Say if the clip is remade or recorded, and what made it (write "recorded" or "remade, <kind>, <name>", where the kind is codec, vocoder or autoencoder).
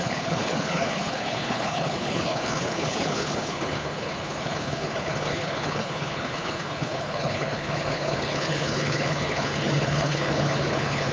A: remade, codec, HILCodec